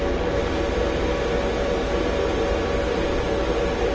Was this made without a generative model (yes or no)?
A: yes